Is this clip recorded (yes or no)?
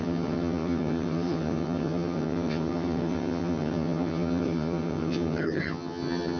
no